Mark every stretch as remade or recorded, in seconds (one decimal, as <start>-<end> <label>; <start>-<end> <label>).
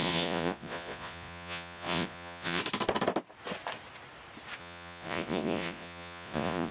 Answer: 0.0-2.6 remade; 2.6-4.6 recorded; 4.6-6.7 remade